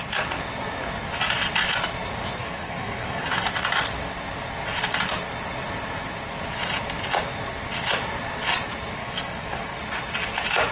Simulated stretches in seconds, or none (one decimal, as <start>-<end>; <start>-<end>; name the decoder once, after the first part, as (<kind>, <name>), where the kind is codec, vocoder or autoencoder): 2.4-3.5 (codec, DAC); 9.0-9.8

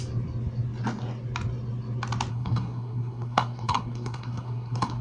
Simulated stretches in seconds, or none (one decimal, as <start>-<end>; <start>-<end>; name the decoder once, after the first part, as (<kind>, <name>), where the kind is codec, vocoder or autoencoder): 2.3-5.0 (codec, SNAC)

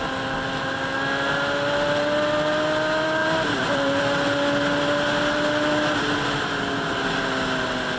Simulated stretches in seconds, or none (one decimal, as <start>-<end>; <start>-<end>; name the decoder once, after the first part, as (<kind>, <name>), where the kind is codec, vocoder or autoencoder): 3.2-4.0 (vocoder, BigVGAN v2)